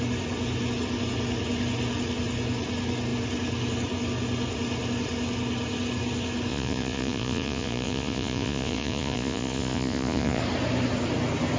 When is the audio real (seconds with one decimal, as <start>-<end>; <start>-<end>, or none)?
0.0-6.5; 10.4-11.6